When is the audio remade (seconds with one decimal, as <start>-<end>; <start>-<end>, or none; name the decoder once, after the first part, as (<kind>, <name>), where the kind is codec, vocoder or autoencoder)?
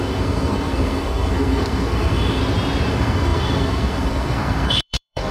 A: 0.0-2.4 (codec, SNAC); 2.9-5.3